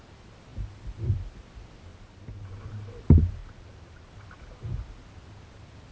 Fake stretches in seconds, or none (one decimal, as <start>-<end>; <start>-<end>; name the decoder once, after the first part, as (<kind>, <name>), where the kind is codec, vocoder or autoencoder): 1.9-2.7 (vocoder, BigVGAN v2); 3.4-4.1